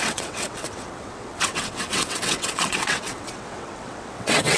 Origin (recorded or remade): remade